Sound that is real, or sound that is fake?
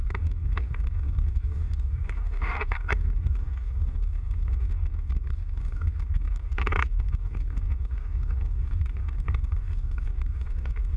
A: fake